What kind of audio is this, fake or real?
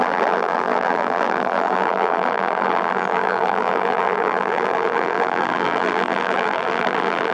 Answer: fake